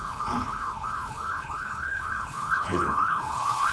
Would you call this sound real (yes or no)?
no